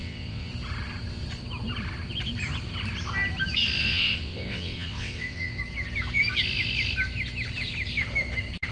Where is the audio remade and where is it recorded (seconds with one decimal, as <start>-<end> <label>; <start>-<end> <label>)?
0.0-0.5 remade; 0.5-3.8 recorded; 3.8-5.6 remade; 5.6-8.7 recorded